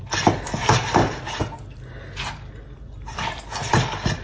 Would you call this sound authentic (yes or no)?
yes